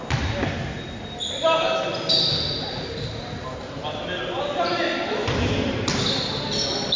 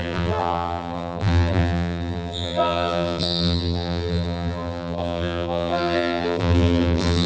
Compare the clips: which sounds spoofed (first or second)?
second